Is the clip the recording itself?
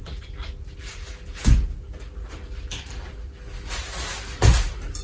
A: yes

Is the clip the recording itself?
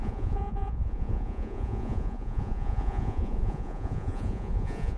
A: no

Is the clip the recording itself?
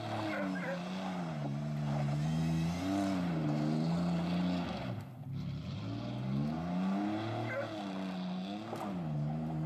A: yes